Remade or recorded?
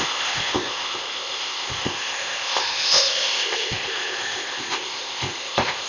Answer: remade